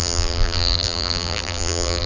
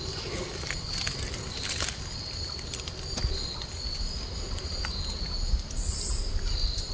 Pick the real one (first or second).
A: second